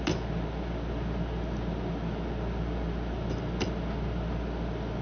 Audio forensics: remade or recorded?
recorded